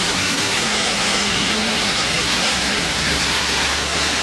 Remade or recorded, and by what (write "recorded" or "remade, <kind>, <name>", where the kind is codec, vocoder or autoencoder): remade, codec, SNAC